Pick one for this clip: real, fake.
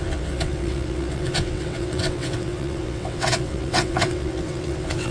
fake